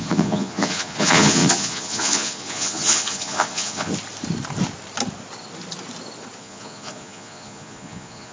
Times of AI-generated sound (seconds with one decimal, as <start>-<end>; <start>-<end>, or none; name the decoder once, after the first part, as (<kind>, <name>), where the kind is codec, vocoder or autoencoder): 0.0-3.9 (vocoder, Vocos); 6.4-8.3